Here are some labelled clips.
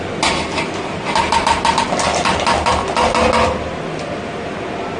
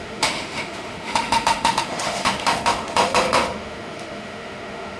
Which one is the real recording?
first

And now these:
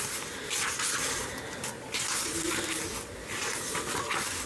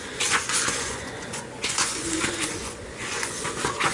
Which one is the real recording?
first